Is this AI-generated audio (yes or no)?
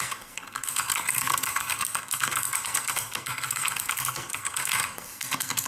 yes